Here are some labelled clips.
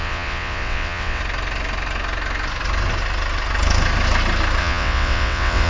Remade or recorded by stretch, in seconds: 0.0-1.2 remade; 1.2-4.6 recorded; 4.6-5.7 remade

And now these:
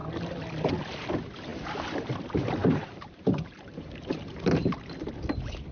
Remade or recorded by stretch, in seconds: 0.0-1.5 recorded; 1.5-2.1 remade; 2.1-2.6 recorded; 2.6-4.6 remade; 4.6-5.7 recorded

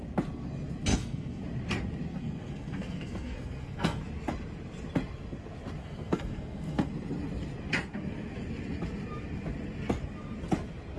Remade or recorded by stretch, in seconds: 0.0-0.9 recorded; 0.9-1.4 remade; 1.4-2.1 recorded; 2.1-4.0 remade; 4.0-5.8 recorded; 5.8-6.9 remade; 6.9-11.0 recorded

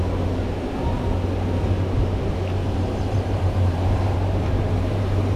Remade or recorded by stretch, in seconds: 0.0-2.6 recorded; 2.6-5.4 remade

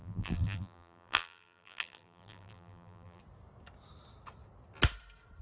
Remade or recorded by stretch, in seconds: 0.0-3.2 remade; 3.2-5.4 recorded

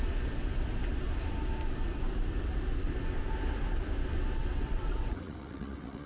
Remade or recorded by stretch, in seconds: 0.0-4.4 recorded; 4.4-6.1 remade

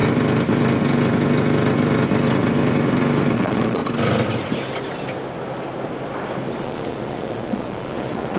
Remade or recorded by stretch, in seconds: 0.0-3.3 recorded; 3.3-3.8 remade; 3.8-6.6 recorded; 6.6-8.4 remade